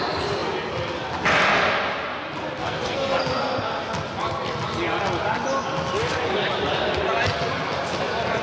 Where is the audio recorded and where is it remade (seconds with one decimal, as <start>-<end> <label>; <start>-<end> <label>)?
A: 0.0-2.6 recorded; 2.6-3.2 remade; 3.2-8.4 recorded